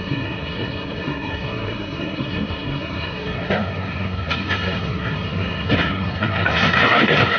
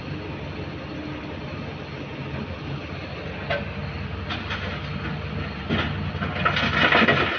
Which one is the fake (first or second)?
first